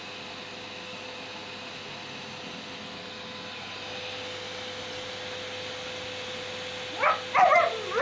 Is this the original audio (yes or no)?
yes